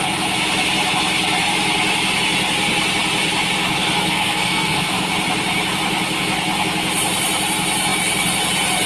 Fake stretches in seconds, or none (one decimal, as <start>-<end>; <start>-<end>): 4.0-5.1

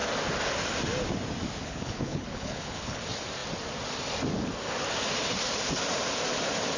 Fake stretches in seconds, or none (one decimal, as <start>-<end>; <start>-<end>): 1.6-3.0

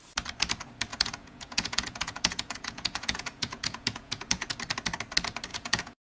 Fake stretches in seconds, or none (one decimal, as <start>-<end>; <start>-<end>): 0.9-4.6; 5.5-6.1

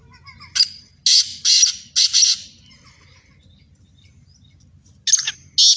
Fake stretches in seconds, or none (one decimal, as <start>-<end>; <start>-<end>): none